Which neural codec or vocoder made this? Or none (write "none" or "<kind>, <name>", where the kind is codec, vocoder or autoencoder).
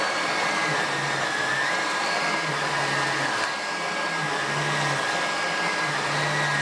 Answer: none